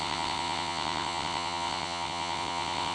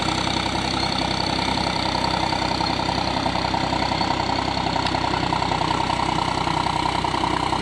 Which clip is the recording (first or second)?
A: second